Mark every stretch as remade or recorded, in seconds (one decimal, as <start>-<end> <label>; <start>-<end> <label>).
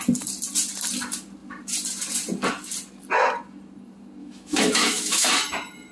0.0-4.2 recorded; 4.2-5.3 remade; 5.3-5.9 recorded